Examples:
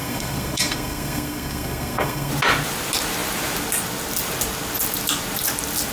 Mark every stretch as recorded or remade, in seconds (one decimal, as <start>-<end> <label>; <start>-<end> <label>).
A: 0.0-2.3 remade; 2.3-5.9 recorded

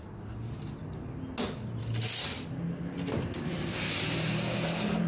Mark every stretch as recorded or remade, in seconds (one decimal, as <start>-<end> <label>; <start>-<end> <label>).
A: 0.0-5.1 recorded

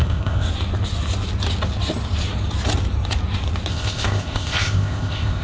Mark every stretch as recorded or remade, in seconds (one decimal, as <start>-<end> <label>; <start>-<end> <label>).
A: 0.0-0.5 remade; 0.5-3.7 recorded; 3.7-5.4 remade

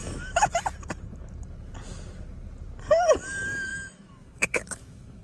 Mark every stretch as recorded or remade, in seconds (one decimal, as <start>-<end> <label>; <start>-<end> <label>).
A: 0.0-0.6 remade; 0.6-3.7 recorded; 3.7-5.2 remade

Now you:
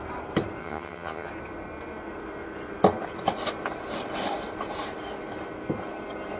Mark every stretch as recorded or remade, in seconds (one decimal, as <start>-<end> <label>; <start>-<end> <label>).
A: 0.0-0.6 recorded; 0.6-1.3 remade; 1.3-6.4 recorded

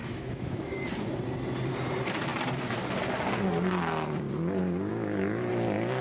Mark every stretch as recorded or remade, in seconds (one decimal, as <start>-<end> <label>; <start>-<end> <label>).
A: 0.0-0.8 remade; 0.8-4.9 recorded; 4.9-5.5 remade; 5.5-6.0 recorded

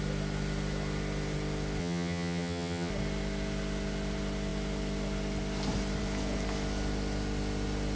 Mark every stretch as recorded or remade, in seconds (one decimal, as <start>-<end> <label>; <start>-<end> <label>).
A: 0.0-1.8 recorded; 1.8-2.9 remade; 2.9-8.0 recorded

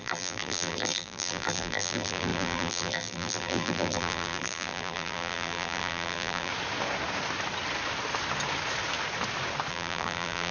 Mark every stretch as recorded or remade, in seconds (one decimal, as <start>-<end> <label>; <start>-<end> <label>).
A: 0.0-6.5 remade; 6.5-9.7 recorded; 9.7-10.5 remade